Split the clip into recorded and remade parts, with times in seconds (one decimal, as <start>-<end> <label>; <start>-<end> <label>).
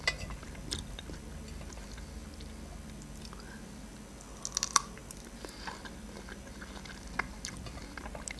0.0-8.4 recorded